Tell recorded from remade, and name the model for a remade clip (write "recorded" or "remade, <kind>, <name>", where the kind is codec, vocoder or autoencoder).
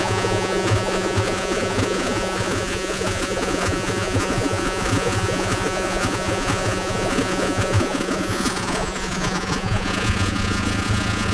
remade, vocoder, Vocos